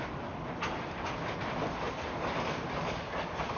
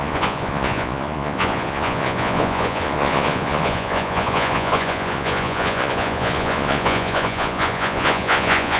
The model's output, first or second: second